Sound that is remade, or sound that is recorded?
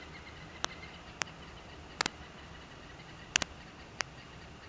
recorded